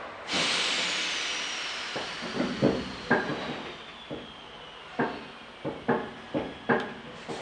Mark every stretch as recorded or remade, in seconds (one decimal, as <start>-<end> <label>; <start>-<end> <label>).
0.0-7.4 recorded